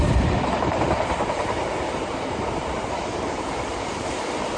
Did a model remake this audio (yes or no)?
yes